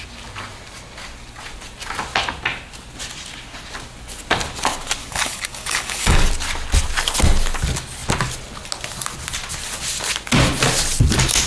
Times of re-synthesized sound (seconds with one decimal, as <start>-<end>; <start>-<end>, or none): 5.0-6.3